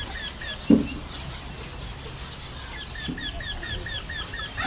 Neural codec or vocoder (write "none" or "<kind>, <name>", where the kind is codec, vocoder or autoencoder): none